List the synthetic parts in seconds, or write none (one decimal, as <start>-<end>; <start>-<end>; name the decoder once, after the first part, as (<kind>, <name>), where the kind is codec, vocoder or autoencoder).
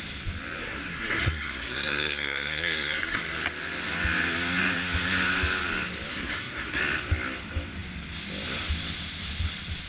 0.6-3.2 (codec, SNAC); 6.1-6.8